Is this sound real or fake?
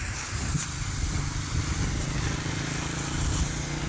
real